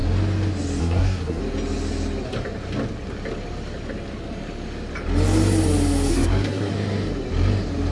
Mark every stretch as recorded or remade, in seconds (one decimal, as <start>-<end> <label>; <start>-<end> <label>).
0.0-0.8 recorded; 0.8-1.4 remade; 1.4-6.1 recorded; 6.1-6.7 remade; 6.7-7.9 recorded